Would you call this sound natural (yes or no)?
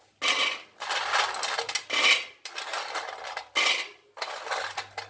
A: yes